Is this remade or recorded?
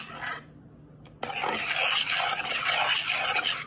recorded